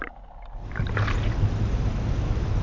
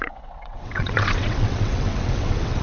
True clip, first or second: first